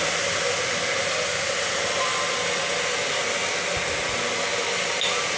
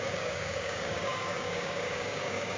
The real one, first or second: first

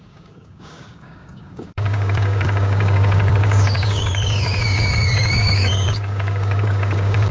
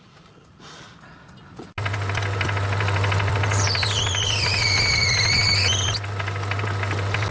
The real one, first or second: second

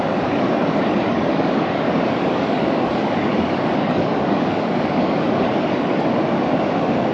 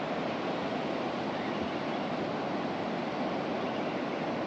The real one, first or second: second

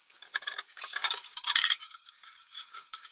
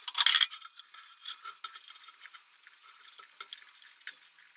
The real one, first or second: second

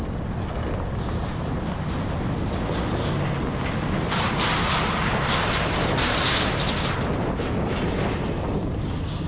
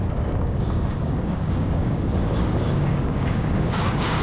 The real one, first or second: first